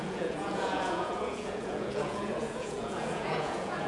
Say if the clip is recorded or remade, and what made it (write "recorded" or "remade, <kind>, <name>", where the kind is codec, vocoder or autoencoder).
remade, vocoder, Vocos